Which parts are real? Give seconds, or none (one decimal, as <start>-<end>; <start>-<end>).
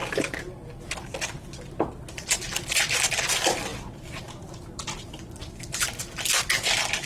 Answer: 0.0-3.7; 5.8-7.1